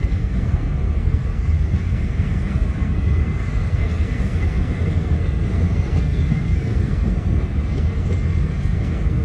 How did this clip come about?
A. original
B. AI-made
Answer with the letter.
B